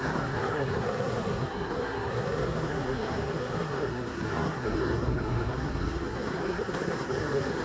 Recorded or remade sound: remade